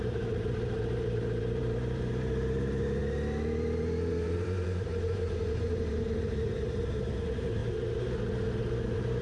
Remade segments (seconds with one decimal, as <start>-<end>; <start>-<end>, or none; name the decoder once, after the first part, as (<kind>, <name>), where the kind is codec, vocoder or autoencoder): 0.0-3.0 (vocoder, BigVGAN v2); 4.1-7.6; 8.6-9.2